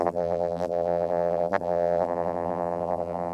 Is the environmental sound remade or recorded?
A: remade